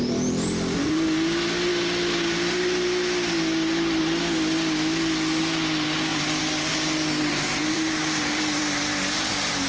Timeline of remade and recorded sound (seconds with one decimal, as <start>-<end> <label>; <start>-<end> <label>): 0.0-6.1 recorded; 6.1-8.6 remade; 8.6-9.7 recorded